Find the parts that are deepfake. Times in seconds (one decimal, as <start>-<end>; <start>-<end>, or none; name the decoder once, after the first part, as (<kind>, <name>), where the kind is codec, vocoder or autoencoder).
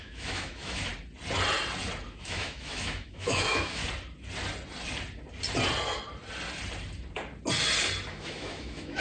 0.0-0.9 (autoencoder, DAC-VAE); 2.1-3.8; 8.1-9.0